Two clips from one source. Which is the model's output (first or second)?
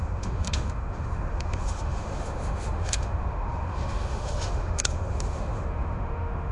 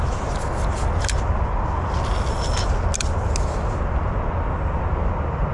first